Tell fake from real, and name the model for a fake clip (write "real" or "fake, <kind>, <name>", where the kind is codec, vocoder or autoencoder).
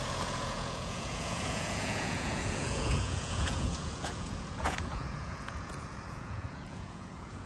fake, vocoder, Vocos